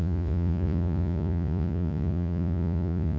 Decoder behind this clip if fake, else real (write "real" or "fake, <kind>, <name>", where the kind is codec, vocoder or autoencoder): fake, vocoder, Vocos